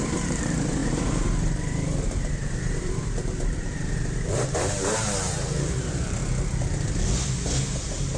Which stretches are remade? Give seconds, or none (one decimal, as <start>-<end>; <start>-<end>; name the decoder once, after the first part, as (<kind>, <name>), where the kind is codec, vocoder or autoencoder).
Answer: 0.0-6.2 (vocoder, BigVGAN v2); 7.7-8.2